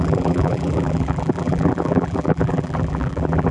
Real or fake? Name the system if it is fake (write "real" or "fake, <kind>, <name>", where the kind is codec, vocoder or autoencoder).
fake, vocoder, BigVGAN v2